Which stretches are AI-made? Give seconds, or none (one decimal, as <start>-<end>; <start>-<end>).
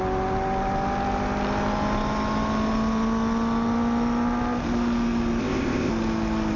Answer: 5.4-5.9